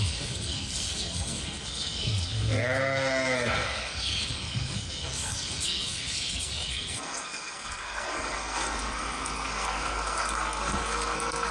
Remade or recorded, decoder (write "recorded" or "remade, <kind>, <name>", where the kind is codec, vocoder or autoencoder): remade, codec, SNAC